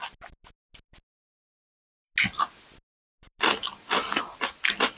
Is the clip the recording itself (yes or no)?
yes